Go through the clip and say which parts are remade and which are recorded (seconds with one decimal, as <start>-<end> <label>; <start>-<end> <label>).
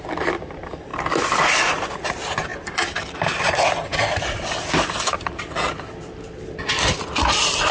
0.0-0.9 remade; 0.9-2.1 recorded; 2.1-2.5 remade; 2.5-3.0 recorded; 3.0-7.7 remade